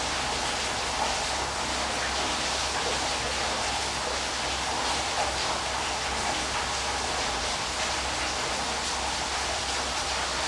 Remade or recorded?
recorded